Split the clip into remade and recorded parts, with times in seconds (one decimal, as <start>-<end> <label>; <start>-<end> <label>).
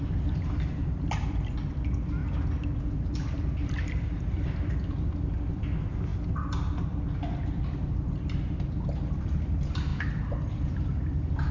0.0-2.2 remade; 2.2-2.8 recorded; 2.8-6.1 remade; 6.1-9.2 recorded; 9.2-11.5 remade